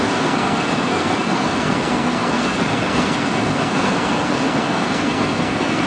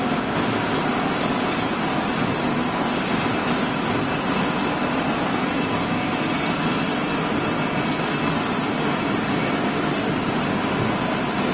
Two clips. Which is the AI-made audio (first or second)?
first